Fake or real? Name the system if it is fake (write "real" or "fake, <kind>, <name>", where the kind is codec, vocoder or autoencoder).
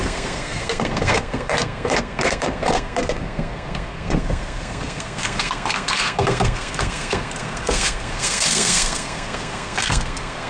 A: fake, codec, SNAC